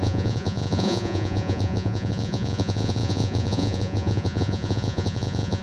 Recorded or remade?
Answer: remade